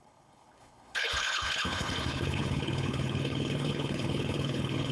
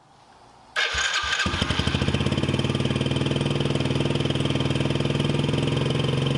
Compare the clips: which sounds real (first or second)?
second